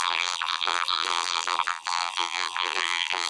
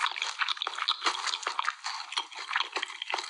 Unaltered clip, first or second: second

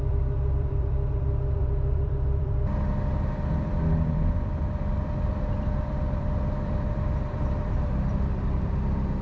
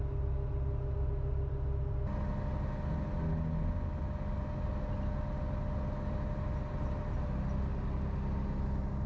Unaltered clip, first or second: second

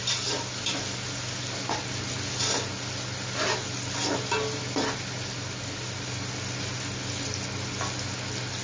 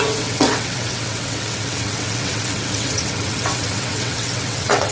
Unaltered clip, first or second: first